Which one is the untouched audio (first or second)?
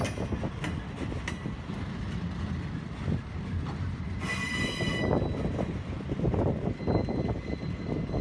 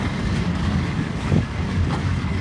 first